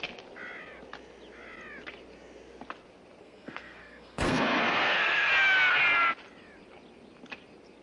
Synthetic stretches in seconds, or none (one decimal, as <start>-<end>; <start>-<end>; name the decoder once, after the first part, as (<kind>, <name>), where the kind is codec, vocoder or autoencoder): 3.2-5.3 (codec, SNAC)